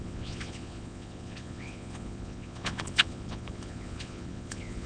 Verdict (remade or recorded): remade